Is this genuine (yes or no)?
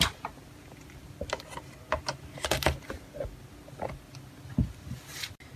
yes